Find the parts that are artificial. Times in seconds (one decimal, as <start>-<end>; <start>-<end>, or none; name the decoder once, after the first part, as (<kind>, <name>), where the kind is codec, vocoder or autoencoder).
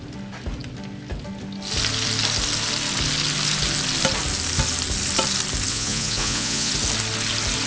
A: 5.7-6.7 (vocoder, Vocos)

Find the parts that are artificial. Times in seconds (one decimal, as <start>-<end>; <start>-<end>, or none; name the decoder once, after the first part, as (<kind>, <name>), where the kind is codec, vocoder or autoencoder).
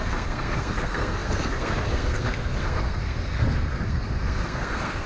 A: 0.0-5.1 (codec, SNAC)